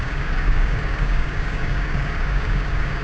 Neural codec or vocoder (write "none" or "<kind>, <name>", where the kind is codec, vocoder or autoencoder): codec, DAC